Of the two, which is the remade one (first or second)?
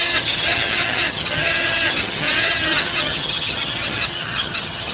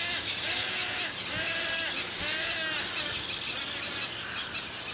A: first